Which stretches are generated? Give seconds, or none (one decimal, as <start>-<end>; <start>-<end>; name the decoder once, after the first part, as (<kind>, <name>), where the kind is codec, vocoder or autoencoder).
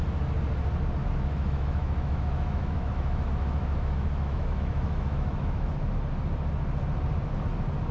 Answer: 1.0-5.7 (autoencoder, DAC-VAE)